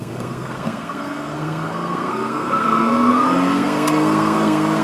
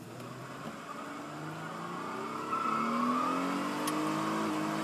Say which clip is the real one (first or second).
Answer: second